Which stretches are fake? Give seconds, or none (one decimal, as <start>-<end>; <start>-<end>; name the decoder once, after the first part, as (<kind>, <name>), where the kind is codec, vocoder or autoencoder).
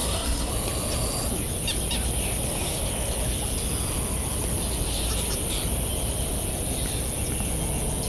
0.0-0.5 (codec, SNAC)